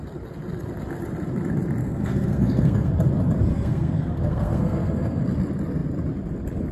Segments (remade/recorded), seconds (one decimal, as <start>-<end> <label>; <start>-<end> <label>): 0.0-1.8 recorded; 1.8-2.9 remade; 2.9-3.5 recorded; 3.5-5.2 remade; 5.2-6.7 recorded